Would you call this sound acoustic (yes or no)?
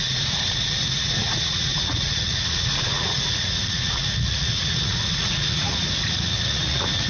no